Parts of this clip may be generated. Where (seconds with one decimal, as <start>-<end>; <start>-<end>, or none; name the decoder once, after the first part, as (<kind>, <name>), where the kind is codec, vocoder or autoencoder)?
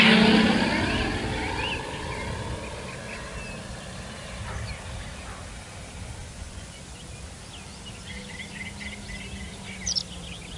6.2-6.8 (vocoder, Vocos)